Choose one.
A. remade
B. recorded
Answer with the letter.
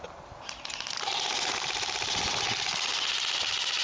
B